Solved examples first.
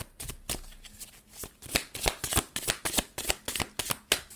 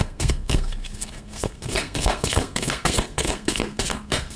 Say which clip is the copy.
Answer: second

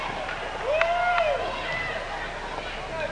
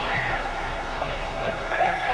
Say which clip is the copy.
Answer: second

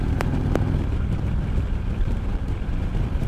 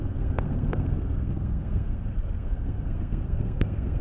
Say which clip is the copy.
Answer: second